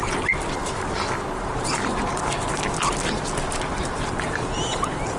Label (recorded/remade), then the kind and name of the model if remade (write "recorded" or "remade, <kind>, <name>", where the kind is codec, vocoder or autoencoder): remade, vocoder, BigVGAN v2